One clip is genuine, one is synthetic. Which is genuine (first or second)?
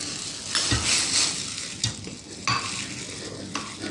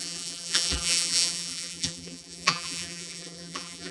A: first